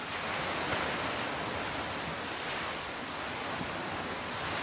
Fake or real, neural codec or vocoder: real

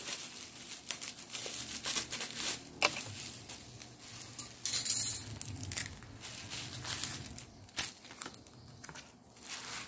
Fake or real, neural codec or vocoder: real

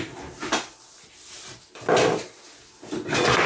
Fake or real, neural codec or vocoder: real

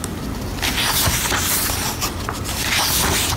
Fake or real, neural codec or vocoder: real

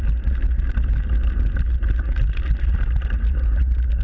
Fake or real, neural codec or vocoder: real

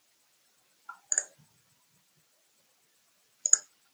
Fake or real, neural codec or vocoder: real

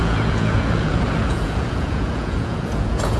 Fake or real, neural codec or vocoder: fake, vocoder, Vocos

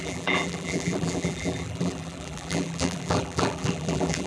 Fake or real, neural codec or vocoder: fake, vocoder, BigVGAN v2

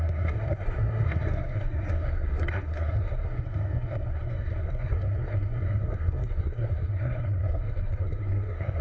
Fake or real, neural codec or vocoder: fake, codec, SNAC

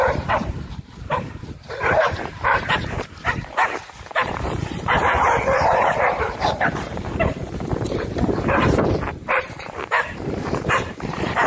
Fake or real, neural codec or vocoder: fake, vocoder, BigVGAN v2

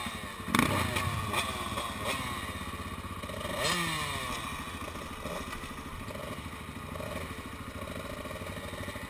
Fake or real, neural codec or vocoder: real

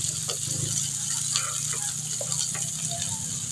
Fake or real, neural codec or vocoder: real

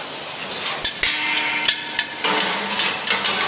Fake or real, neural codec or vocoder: real